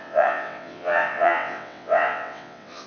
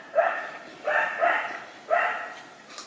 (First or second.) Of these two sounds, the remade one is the first